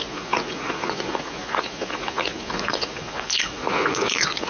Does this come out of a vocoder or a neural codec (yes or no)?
yes